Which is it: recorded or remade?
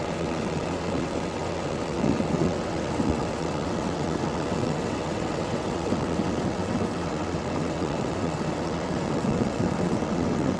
remade